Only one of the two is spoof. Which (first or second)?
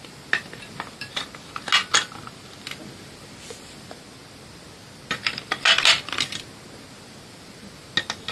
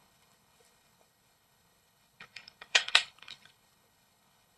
second